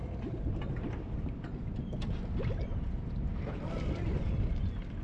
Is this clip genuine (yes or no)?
yes